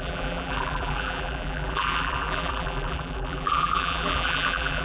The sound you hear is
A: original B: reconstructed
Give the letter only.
B